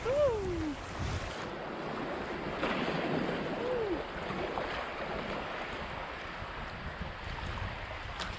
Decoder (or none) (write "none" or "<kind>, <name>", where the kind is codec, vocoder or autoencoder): none